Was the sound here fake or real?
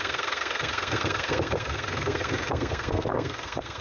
fake